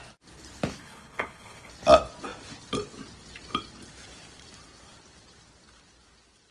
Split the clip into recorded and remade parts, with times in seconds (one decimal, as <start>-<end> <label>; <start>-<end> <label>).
0.0-0.8 recorded; 0.8-1.7 remade; 1.7-6.5 recorded